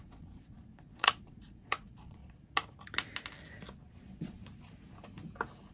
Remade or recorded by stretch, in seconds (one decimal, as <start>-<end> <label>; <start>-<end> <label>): 0.0-2.2 remade; 2.2-3.9 recorded; 3.9-4.4 remade; 4.4-5.7 recorded